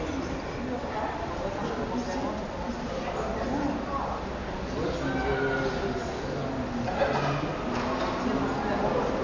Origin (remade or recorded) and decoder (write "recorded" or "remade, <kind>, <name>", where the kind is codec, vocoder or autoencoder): recorded